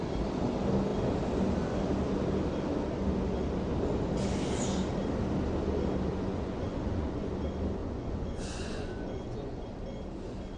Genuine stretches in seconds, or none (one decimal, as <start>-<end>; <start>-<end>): 0.0-6.1; 7.3-7.8; 9.7-10.6